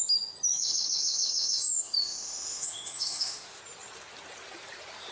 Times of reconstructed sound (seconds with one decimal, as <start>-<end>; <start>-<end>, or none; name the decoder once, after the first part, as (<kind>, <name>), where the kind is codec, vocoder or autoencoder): 0.5-3.6 (autoencoder, DAC-VAE)